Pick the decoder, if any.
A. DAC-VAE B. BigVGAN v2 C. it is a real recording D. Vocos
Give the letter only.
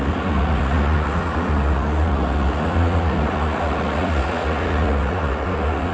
D